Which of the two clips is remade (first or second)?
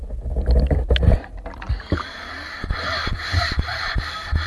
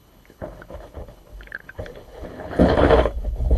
second